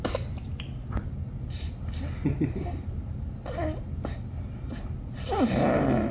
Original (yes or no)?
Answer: yes